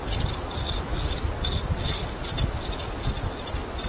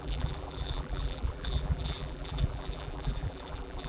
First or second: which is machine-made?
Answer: second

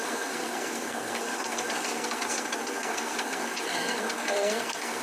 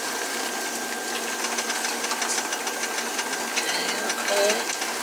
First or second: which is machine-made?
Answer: first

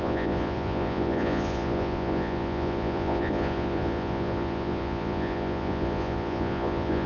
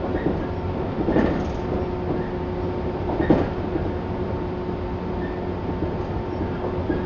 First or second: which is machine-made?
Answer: first